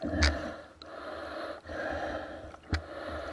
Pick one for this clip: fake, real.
real